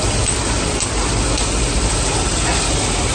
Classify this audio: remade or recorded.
recorded